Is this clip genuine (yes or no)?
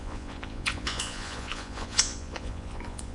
no